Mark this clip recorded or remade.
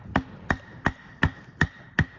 recorded